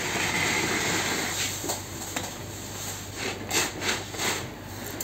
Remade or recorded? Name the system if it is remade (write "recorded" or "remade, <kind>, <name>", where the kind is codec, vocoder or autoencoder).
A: recorded